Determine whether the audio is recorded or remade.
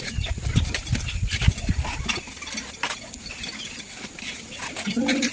recorded